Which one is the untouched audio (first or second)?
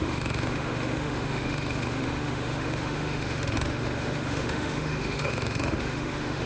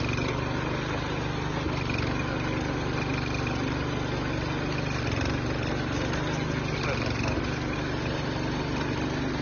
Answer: second